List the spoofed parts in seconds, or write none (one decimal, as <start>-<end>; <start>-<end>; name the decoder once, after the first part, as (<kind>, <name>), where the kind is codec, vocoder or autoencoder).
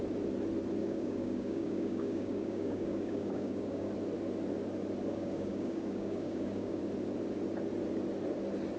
0.8-3.9 (codec, DAC); 5.1-6.8